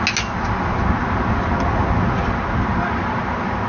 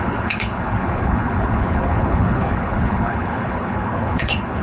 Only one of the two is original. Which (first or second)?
first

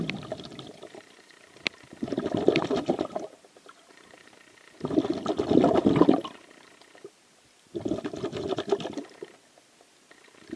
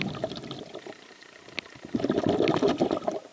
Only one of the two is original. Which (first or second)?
second